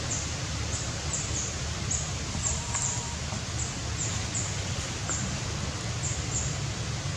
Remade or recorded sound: recorded